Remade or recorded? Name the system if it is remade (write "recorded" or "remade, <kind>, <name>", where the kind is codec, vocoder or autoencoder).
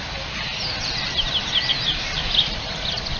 recorded